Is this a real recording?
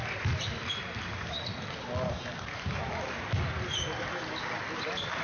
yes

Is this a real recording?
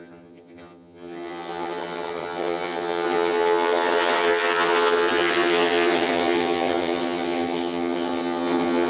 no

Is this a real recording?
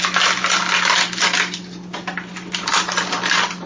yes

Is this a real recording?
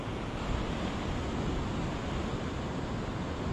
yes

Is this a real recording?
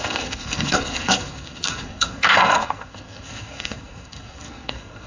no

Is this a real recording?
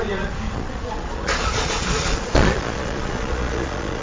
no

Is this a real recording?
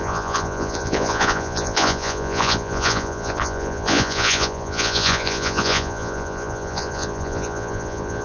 no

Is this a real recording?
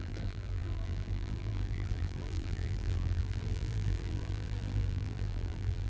no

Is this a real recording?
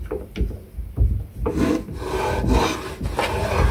yes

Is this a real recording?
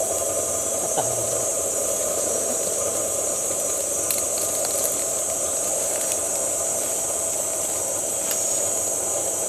yes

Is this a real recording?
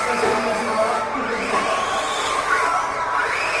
yes